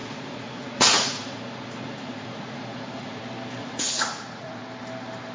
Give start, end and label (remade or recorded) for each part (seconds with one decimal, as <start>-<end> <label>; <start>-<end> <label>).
0.0-3.2 remade; 3.2-3.6 recorded; 3.6-4.6 remade; 4.6-5.3 recorded